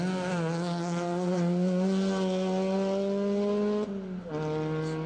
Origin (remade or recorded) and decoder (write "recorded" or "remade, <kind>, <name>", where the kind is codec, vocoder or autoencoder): recorded